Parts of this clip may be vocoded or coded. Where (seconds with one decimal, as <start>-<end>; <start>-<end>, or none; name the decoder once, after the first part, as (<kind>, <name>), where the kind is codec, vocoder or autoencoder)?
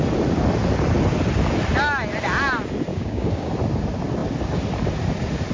2.9-3.5 (codec, DAC)